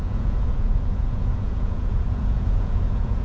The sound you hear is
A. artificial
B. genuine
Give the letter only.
A